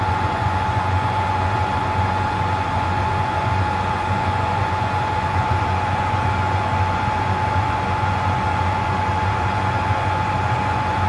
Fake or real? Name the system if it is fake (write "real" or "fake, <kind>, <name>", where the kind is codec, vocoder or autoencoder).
fake, vocoder, Vocos